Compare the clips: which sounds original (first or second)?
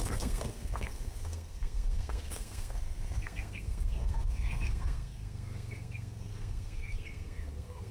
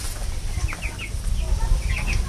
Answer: second